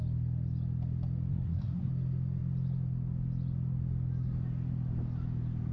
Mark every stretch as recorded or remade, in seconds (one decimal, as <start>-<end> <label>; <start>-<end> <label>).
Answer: 0.0-1.3 recorded; 1.3-1.9 remade; 1.9-5.7 recorded